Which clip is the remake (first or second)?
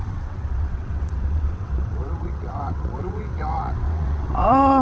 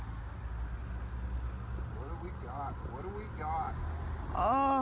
first